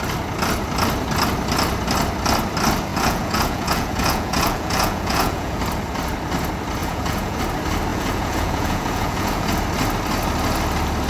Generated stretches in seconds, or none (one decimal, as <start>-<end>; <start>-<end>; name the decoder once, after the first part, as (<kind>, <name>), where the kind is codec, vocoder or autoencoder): 2.9-5.6 (vocoder, Vocos); 6.8-7.4; 7.9-9.5